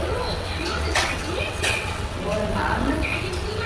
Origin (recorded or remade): remade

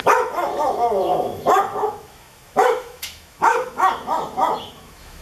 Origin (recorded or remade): remade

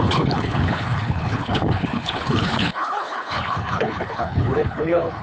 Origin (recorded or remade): remade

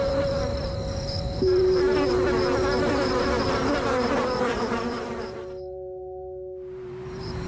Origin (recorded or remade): remade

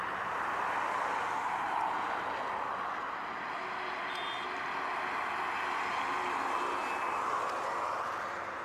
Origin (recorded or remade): recorded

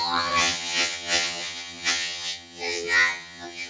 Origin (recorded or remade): remade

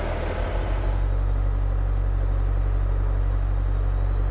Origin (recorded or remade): recorded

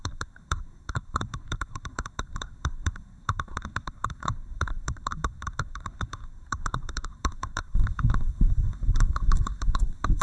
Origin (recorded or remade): remade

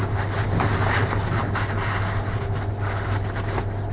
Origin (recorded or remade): recorded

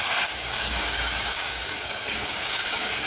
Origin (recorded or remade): remade